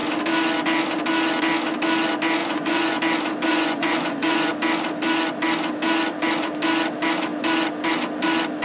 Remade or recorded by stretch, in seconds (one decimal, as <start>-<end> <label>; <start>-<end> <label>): 0.0-2.4 recorded; 2.4-3.0 remade; 3.0-3.5 recorded; 3.5-4.5 remade; 4.5-8.6 recorded